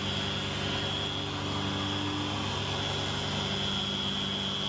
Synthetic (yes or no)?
no